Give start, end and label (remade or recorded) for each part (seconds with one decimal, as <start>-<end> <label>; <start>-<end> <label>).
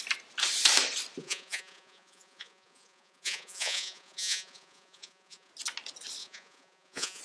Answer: 0.0-1.2 recorded; 1.2-5.5 remade; 5.5-6.2 recorded; 6.2-7.2 remade